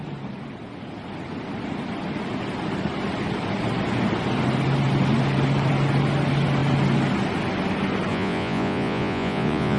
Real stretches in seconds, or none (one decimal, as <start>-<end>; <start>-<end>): 0.0-8.1